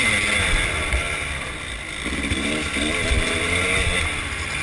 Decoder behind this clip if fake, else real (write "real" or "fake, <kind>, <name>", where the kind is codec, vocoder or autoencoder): real